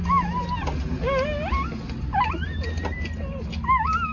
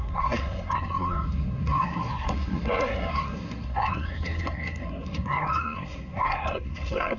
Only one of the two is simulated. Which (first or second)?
second